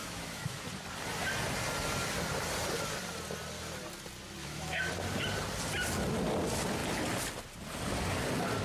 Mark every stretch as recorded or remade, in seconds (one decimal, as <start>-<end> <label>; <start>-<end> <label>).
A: 0.0-0.6 remade; 0.6-4.4 recorded; 4.4-4.9 remade; 4.9-8.6 recorded